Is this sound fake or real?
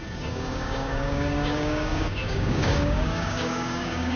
fake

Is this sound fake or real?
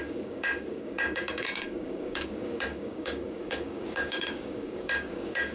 fake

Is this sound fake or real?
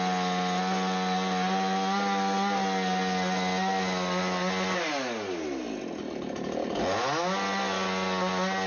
real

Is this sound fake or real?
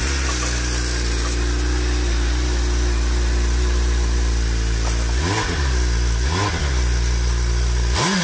real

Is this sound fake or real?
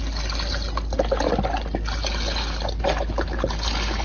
real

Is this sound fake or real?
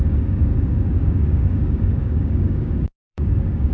fake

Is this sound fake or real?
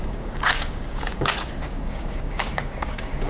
fake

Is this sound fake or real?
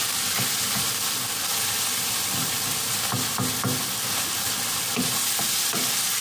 real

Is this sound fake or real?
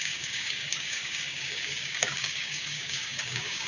fake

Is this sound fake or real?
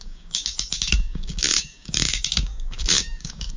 fake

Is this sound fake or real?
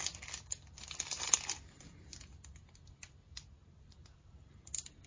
real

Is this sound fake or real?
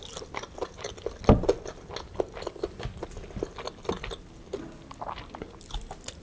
real